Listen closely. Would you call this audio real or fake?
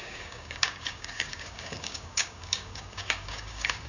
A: fake